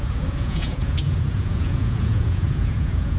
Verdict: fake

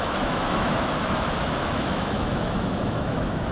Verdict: fake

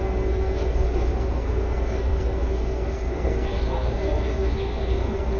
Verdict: fake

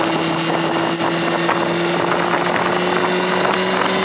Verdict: real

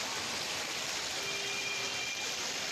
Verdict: real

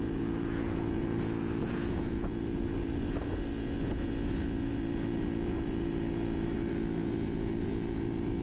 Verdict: fake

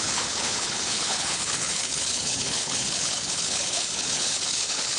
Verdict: fake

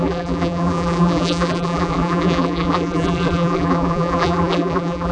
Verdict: fake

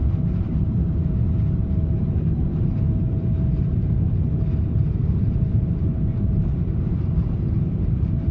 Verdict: fake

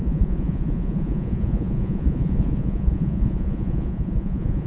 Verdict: fake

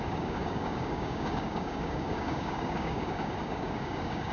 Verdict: fake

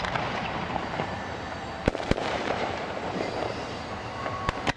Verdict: fake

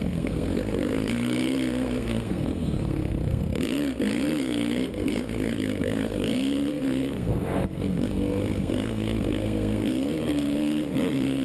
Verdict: fake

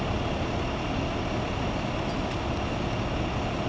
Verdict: real